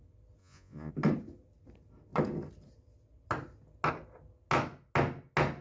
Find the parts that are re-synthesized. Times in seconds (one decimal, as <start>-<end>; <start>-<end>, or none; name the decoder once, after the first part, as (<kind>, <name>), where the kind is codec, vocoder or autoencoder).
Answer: 0.4-0.9 (vocoder, Vocos)

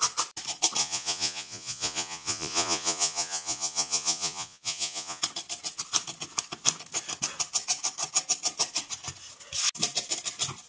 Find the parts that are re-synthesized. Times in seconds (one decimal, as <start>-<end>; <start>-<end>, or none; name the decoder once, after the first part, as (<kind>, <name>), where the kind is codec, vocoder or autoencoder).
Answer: 0.8-5.2 (vocoder, Vocos)

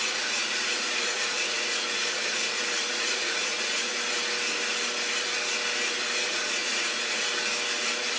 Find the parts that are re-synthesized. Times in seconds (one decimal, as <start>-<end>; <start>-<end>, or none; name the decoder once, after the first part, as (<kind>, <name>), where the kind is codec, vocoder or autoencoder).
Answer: 0.0-3.9 (vocoder, Vocos); 6.3-7.2

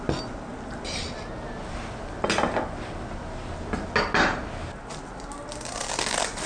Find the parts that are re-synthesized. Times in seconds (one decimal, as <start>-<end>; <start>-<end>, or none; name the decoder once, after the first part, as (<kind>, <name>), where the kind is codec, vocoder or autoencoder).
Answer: none

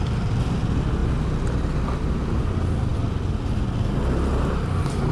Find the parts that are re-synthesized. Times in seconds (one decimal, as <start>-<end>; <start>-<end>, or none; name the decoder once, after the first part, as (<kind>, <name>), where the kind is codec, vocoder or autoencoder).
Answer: none

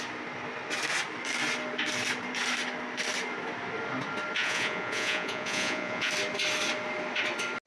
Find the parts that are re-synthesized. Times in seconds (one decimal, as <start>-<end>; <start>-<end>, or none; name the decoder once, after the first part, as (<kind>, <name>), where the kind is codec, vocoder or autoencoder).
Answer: 4.4-6.1 (vocoder, Vocos)

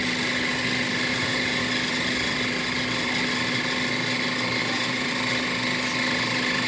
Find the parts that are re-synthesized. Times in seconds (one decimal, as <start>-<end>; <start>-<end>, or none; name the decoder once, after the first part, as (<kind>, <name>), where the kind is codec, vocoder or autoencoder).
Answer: 1.1-1.6 (vocoder, Vocos); 4.6-5.1

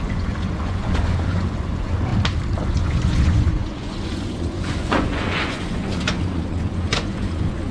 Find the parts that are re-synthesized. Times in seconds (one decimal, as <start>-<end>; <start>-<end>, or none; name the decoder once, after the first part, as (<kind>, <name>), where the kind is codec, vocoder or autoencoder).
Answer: 0.0-2.1 (vocoder, Vocos); 2.6-7.7